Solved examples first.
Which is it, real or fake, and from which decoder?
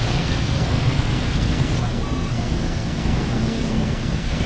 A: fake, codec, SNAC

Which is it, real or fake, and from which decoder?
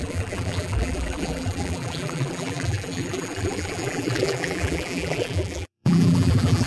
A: fake, vocoder, BigVGAN v2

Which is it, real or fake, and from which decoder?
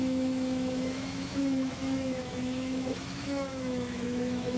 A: fake, autoencoder, DAC-VAE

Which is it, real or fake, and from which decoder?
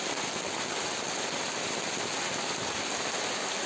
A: real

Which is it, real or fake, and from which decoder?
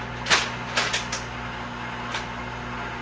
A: real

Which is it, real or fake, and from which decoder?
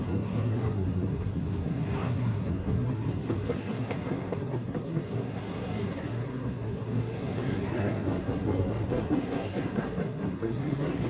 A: fake, codec, SNAC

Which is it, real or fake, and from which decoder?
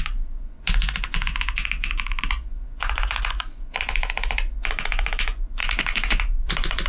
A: fake, vocoder, Vocos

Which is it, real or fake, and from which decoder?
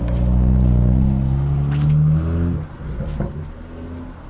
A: real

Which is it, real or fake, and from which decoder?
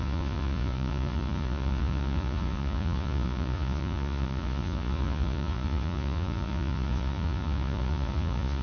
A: fake, vocoder, Vocos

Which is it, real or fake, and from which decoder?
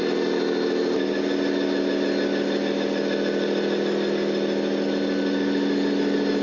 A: real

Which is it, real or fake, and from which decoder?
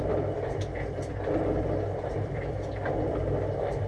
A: fake, vocoder, BigVGAN v2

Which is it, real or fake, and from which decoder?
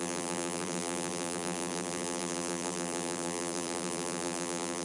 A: fake, vocoder, BigVGAN v2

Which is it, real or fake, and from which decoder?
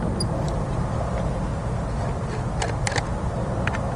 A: real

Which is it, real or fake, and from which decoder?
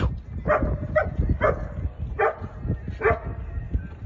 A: real